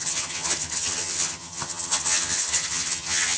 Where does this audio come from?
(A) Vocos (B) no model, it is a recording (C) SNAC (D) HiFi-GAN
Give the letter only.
D